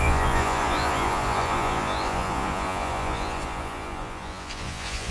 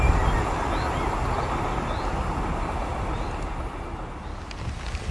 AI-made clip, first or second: first